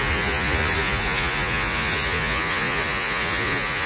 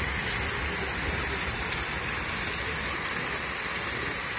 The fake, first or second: first